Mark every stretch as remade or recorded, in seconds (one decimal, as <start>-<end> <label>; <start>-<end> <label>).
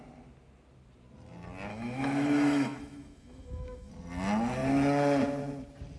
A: 0.0-1.7 recorded; 1.7-3.9 remade; 3.9-6.0 recorded